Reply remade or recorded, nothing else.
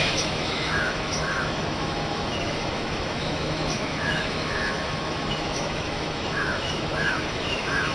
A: remade